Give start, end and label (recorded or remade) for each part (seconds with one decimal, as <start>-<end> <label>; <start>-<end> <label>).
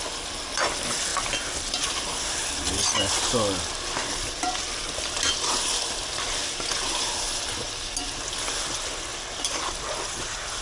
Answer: 0.0-1.1 recorded; 1.1-2.5 remade; 2.5-4.0 recorded; 4.0-5.6 remade; 5.6-9.1 recorded; 9.1-10.6 remade